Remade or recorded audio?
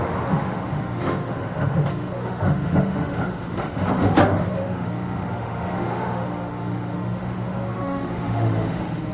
remade